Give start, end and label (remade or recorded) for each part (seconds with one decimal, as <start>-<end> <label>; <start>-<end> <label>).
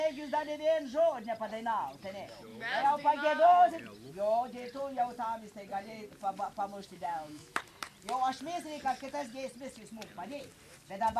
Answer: 0.0-2.5 recorded; 2.5-3.7 remade; 3.7-6.7 recorded; 6.7-7.6 remade; 7.6-11.2 recorded